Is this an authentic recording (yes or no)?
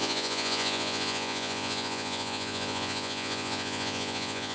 no